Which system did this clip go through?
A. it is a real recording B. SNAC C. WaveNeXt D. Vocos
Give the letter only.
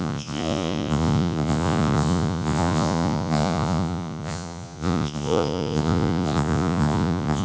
D